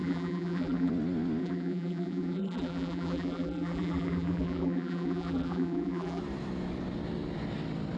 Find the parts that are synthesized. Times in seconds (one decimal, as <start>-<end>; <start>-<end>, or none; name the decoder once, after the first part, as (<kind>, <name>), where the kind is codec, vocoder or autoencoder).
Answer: 0.0-0.9 (vocoder, BigVGAN v2); 1.4-6.2